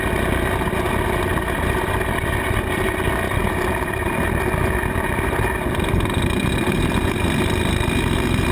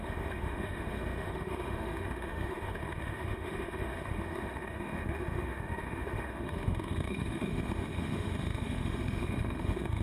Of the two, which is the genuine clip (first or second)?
first